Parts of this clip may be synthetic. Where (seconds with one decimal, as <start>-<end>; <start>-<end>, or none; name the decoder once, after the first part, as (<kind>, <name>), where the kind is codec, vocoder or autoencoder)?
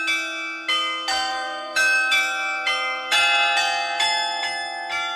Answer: 1.3-4.4 (vocoder, BigVGAN v2)